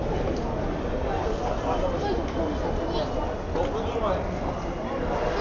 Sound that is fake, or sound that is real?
real